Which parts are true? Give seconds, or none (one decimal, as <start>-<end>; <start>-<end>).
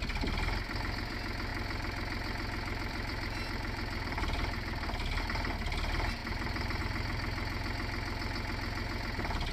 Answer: 0.0-1.5; 5.2-6.2; 6.8-9.5